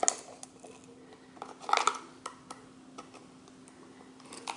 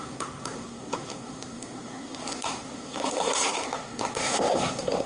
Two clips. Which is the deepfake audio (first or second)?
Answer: second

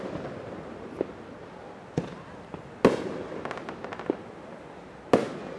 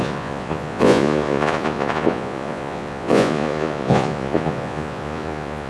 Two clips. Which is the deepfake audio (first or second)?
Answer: second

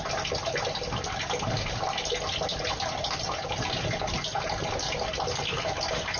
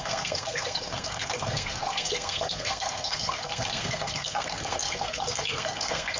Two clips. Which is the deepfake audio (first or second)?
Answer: second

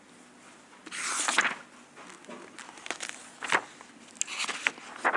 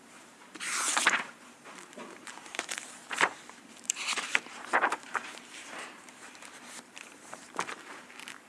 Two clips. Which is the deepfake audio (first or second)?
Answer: second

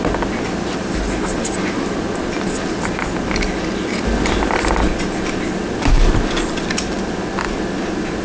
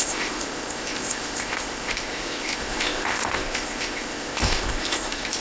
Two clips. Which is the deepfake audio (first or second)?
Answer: second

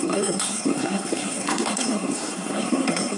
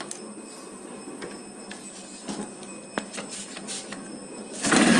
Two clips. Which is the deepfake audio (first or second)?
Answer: first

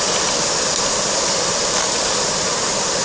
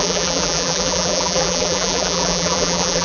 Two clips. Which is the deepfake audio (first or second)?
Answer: second